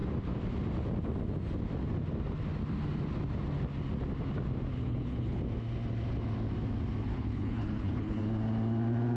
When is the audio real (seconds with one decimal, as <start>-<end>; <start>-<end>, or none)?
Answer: 0.0-4.7; 5.4-7.1; 8.2-9.2

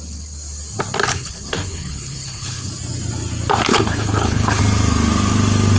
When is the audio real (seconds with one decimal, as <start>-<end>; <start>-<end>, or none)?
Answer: 0.0-1.1; 2.7-3.7; 4.6-5.8

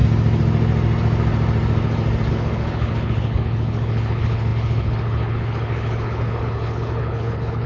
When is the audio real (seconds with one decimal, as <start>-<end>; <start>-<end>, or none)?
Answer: 0.0-2.3